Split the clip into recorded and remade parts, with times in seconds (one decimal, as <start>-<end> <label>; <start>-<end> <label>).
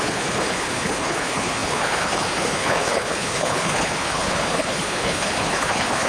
0.0-6.1 remade